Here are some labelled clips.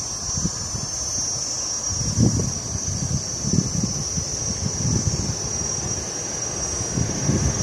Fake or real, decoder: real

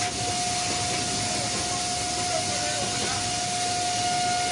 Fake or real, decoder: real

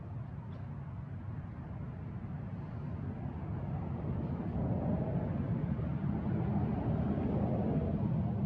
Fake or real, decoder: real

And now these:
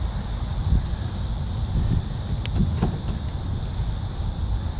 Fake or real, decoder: fake, vocoder, BigVGAN v2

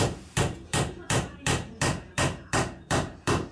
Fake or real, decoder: fake, vocoder, BigVGAN v2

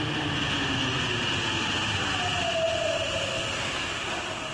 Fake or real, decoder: real